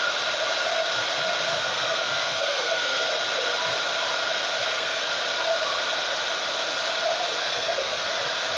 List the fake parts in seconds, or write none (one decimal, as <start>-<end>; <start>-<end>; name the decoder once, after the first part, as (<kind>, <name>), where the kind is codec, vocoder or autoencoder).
1.5-3.1 (codec, SNAC); 4.6-5.1; 7.4-8.0